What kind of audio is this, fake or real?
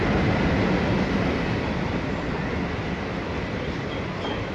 real